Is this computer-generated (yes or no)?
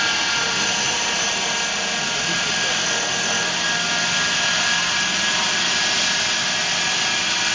no